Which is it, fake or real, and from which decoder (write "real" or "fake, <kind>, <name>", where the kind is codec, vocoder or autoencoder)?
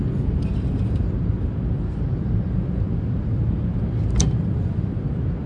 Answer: fake, vocoder, BigVGAN v2